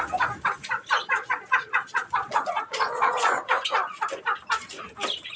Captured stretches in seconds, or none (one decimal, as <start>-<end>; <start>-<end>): 0.0-1.1; 3.5-5.4